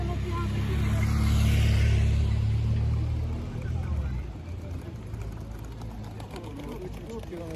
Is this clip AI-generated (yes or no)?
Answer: no